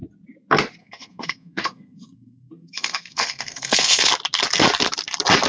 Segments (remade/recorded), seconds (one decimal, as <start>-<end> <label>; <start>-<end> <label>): 0.0-0.8 recorded; 0.8-4.1 remade; 4.1-5.5 recorded

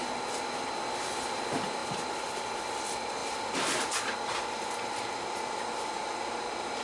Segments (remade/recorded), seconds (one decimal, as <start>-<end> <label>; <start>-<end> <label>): 0.0-6.8 recorded

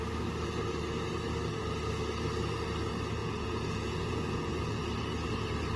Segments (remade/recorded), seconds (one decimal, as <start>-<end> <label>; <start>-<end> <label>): 0.0-3.2 recorded; 3.2-4.6 remade; 4.6-5.8 recorded

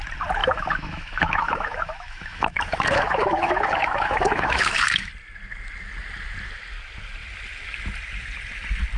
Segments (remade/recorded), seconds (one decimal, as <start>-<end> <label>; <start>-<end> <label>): 0.0-0.4 recorded; 0.4-5.1 remade; 5.1-9.0 recorded

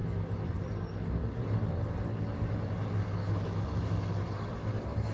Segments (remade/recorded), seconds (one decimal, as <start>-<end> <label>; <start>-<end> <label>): 0.0-3.2 recorded; 3.2-3.9 remade; 3.9-5.1 recorded

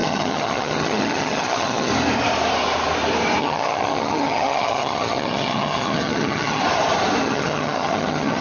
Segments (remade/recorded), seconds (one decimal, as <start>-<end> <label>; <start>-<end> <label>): 0.0-1.9 remade; 1.9-3.4 recorded; 3.4-6.6 remade; 6.6-7.2 recorded; 7.2-8.4 remade